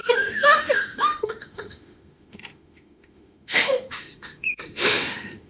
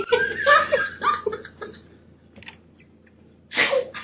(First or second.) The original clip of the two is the second